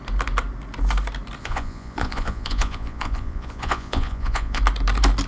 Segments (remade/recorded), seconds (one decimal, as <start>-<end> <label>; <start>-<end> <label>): 0.0-1.4 recorded; 1.4-4.6 remade; 4.6-5.3 recorded